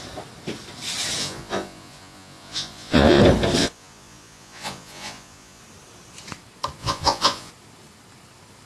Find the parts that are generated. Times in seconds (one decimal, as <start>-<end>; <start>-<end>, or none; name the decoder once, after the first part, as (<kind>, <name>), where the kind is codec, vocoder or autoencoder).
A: 1.2-3.2 (vocoder, Vocos); 3.6-5.6; 6.8-7.5